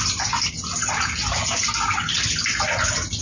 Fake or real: real